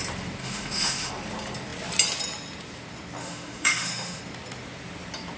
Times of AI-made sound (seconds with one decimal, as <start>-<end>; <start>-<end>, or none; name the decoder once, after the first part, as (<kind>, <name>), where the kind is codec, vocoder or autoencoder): 0.4-1.1 (autoencoder, DAC-VAE); 3.2-4.2